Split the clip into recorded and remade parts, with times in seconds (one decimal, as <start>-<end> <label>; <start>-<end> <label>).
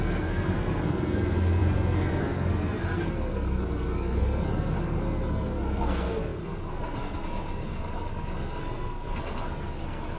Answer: 0.0-10.2 remade